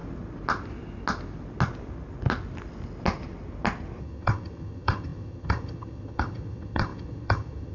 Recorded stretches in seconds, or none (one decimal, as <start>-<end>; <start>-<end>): 0.0-4.0